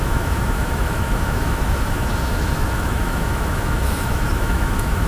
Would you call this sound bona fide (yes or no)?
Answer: no